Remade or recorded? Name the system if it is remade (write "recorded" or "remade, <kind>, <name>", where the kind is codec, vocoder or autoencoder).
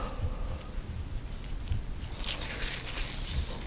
recorded